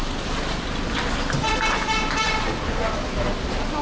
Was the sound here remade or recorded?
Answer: recorded